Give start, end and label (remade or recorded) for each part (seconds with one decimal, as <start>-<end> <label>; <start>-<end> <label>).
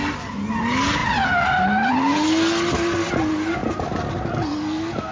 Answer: 0.0-5.1 recorded